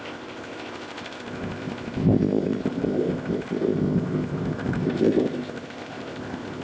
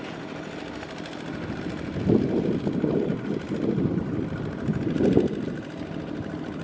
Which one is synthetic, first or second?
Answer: first